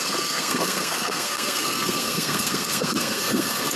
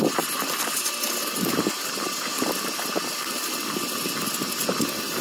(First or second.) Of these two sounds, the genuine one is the second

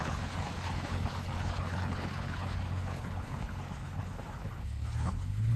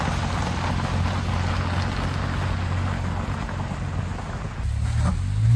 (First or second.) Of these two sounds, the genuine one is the second